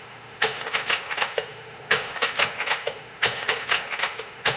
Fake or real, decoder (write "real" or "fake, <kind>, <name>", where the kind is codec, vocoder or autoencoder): fake, autoencoder, DAC-VAE